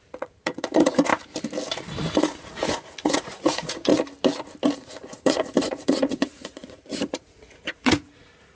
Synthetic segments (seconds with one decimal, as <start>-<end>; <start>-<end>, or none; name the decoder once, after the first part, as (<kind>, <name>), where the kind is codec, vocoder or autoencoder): 0.0-1.1 (vocoder, Vocos); 2.2-3.9; 4.8-8.6